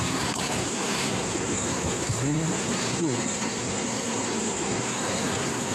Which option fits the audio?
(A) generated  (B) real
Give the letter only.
A